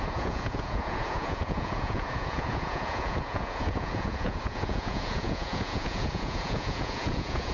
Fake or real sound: fake